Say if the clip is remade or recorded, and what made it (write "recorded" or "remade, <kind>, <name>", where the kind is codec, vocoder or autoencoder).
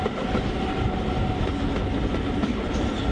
recorded